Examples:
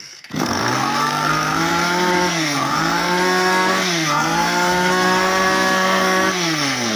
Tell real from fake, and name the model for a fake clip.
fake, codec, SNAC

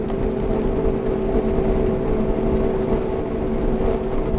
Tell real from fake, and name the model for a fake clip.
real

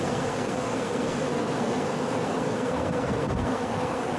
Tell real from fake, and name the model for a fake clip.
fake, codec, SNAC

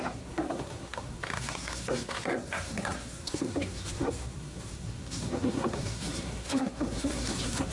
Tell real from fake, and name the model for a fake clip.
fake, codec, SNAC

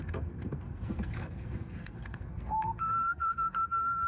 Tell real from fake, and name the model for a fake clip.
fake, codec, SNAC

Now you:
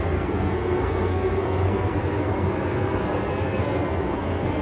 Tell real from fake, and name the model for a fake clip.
fake, codec, SNAC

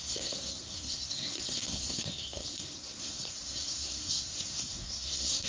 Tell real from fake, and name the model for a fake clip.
fake, codec, SNAC